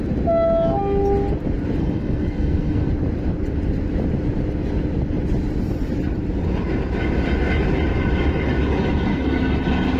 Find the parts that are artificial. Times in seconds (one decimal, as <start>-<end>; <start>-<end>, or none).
1.8-2.9; 9.1-9.6